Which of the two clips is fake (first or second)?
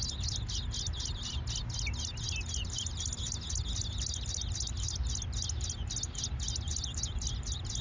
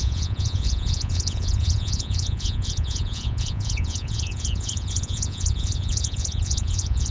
second